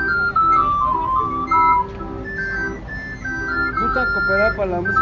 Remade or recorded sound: recorded